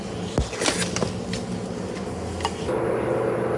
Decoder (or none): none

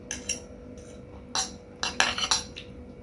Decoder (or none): none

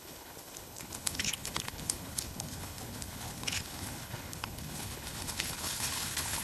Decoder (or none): codec, HILCodec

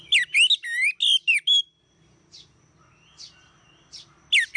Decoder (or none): none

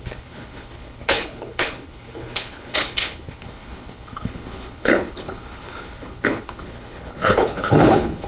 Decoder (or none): codec, HILCodec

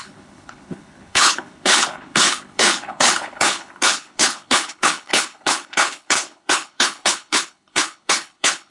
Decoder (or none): codec, HILCodec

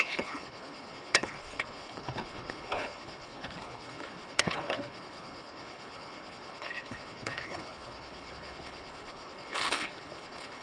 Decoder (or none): codec, HILCodec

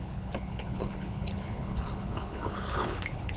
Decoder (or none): codec, HILCodec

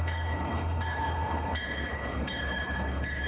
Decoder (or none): codec, HILCodec